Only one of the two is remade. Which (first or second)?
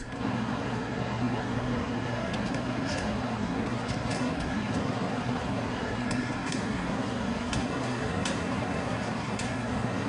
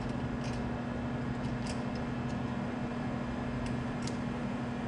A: first